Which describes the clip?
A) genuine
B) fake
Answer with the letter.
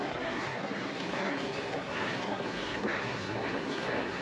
B